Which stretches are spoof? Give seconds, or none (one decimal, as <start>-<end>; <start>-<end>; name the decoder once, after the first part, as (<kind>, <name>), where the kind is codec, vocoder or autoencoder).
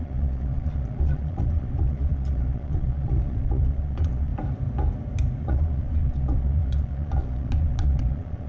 0.0-4.3 (vocoder, Vocos); 5.4-8.5